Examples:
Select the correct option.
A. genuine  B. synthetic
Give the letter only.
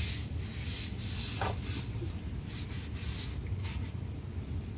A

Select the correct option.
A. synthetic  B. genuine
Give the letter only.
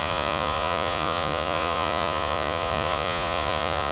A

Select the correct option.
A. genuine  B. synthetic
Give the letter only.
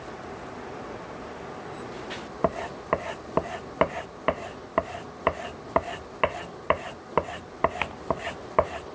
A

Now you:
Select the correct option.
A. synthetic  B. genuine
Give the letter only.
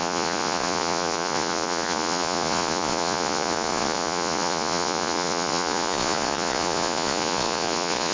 A